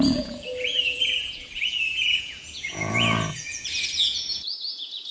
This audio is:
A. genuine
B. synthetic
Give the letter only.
B